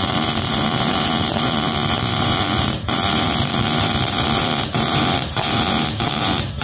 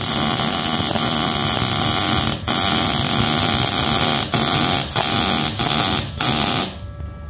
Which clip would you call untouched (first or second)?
second